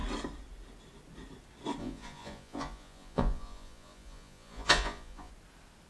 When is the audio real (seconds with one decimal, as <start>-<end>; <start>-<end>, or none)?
0.0-1.8; 5.3-5.9

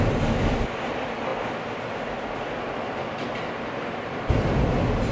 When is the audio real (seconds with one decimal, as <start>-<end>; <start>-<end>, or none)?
0.0-5.1

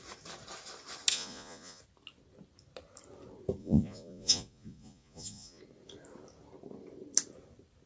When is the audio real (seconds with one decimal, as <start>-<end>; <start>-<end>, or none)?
0.0-1.1; 1.8-3.6; 5.6-7.9

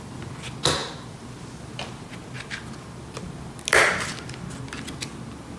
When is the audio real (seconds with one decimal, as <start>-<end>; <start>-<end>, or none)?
0.0-5.6

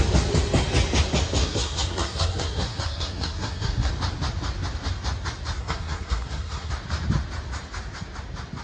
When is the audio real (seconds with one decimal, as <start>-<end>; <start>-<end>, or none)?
0.0-1.4; 3.9-5.6; 6.7-8.6

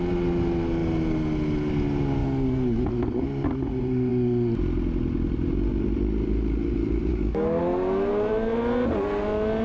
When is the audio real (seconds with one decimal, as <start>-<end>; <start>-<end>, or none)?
0.0-2.2; 2.9-7.1; 7.6-9.6